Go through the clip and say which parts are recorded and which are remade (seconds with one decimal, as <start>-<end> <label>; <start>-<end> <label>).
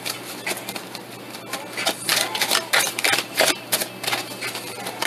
0.0-5.1 recorded